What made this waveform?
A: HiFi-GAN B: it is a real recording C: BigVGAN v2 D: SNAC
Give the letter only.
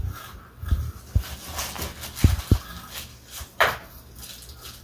B